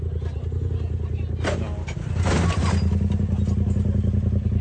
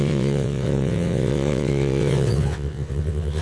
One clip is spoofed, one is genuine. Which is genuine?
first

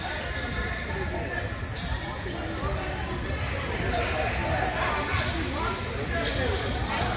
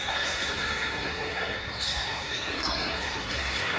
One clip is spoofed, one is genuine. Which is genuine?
first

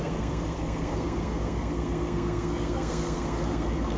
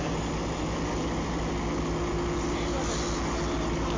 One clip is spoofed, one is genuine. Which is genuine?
second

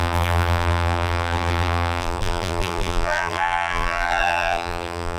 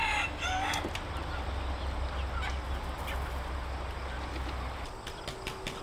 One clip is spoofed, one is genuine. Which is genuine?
second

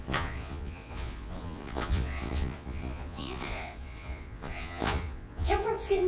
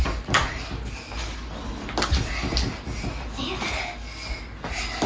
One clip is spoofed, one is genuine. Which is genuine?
second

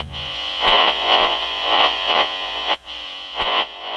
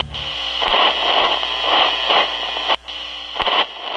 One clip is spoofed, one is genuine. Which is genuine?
second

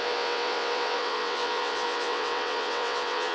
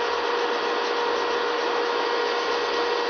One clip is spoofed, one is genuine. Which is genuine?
second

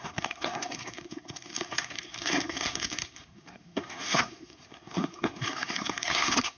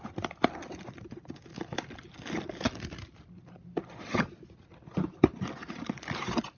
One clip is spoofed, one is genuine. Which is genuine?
second